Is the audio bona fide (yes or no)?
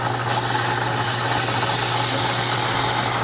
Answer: yes